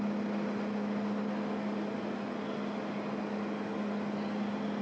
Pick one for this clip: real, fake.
real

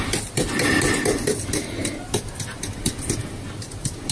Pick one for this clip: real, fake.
real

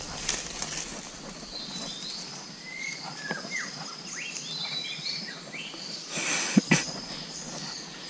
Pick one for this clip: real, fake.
real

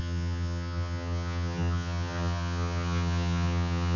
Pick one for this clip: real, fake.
fake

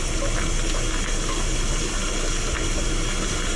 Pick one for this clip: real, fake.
real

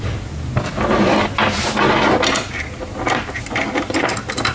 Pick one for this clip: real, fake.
real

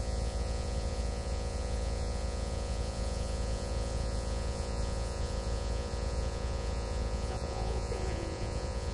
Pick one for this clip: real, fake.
fake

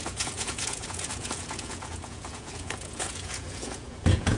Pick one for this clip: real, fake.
fake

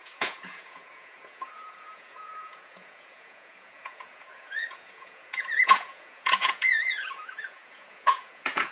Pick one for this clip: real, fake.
fake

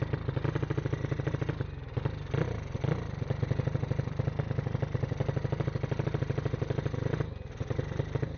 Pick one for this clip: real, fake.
real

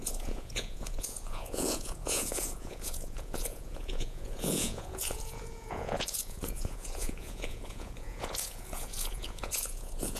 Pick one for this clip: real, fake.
fake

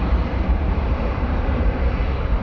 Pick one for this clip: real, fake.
fake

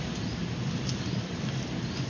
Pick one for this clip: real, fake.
real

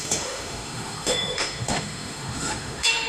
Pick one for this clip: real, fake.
fake